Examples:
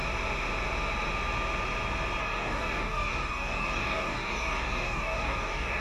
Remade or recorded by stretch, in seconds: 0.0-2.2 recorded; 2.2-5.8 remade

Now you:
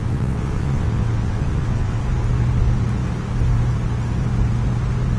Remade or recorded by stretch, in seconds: 0.0-2.0 remade; 2.0-5.2 recorded

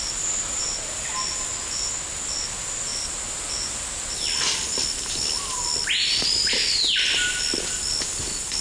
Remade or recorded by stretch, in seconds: 0.0-8.6 recorded

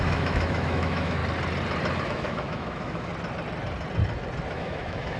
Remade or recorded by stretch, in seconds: 0.0-1.2 remade; 1.2-2.0 recorded; 2.0-3.1 remade; 3.1-4.5 recorded; 4.5-5.2 remade